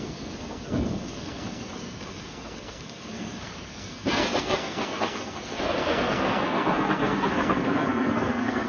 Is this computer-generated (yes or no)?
yes